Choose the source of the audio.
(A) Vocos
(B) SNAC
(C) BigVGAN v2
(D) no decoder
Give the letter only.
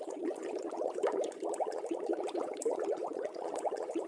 A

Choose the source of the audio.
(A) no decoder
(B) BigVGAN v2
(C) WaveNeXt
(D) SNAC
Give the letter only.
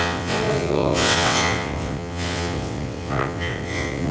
C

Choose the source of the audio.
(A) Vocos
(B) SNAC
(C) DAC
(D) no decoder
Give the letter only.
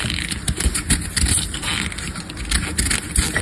D